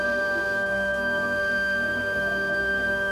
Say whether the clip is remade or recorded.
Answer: remade